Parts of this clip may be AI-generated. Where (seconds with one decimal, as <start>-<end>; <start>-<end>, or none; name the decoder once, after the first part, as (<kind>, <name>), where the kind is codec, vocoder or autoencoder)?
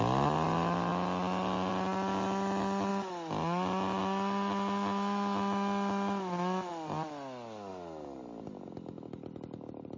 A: none